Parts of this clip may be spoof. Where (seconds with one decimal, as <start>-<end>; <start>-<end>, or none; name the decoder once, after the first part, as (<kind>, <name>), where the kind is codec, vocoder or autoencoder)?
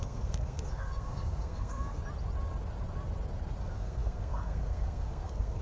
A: 0.0-2.0 (codec, SNAC); 3.6-5.6